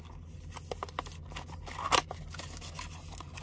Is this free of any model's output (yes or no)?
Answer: yes